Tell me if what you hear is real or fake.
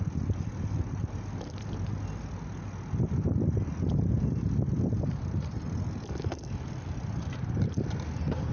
real